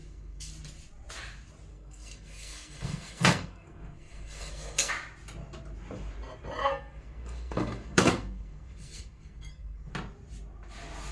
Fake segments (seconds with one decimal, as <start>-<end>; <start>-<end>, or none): 0.0-0.5; 1.7-4.9; 6.6-9.9